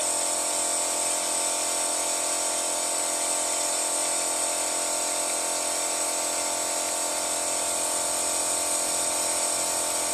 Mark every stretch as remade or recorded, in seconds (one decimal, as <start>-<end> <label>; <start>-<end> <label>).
0.0-0.5 remade; 0.5-10.1 recorded

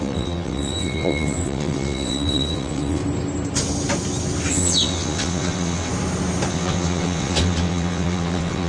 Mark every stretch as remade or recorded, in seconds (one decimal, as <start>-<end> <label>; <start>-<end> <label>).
0.0-3.0 remade; 3.0-4.5 recorded; 4.5-5.9 remade; 5.9-6.5 recorded; 6.5-8.7 remade

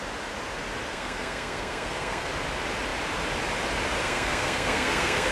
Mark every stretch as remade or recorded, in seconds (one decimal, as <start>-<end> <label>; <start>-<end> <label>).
0.0-0.9 recorded; 0.9-2.3 remade; 2.3-4.0 recorded; 4.0-5.3 remade

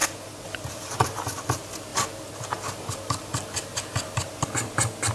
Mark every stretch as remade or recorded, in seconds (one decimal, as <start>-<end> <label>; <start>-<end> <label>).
0.0-0.9 remade; 0.9-1.9 recorded; 1.9-4.5 remade; 4.5-5.1 recorded